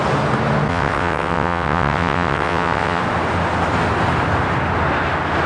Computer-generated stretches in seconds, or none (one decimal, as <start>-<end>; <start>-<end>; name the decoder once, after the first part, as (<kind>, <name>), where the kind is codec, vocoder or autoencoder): 0.7-3.0 (vocoder, WaveNeXt)